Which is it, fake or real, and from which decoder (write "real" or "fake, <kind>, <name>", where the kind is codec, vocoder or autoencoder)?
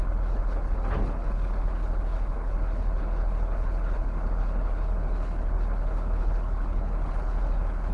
fake, codec, HILCodec